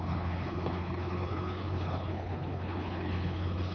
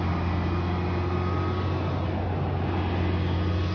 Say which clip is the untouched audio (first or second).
second